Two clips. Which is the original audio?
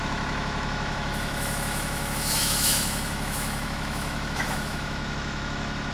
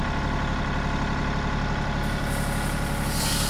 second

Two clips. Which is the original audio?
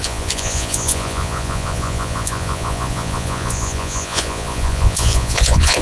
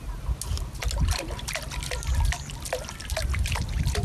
second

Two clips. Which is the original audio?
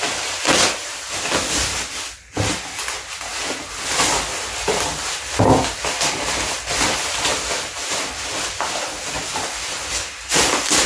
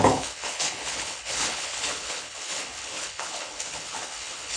first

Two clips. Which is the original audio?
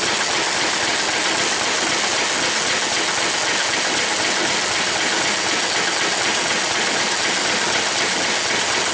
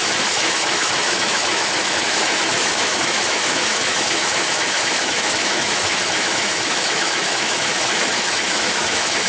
first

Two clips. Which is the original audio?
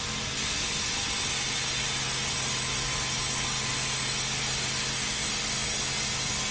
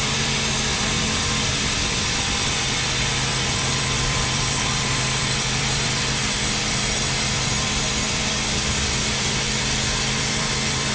first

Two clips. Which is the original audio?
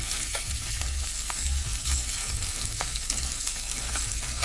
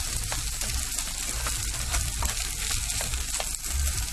second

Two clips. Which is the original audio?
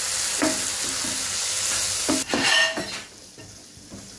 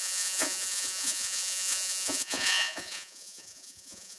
first